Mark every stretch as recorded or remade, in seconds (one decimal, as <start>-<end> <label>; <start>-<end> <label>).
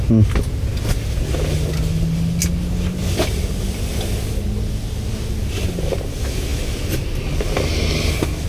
0.0-8.5 recorded